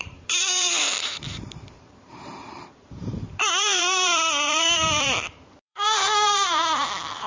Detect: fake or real fake